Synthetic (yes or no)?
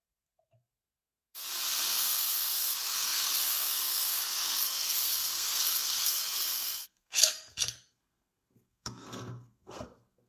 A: yes